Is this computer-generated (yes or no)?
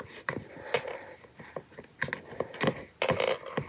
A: no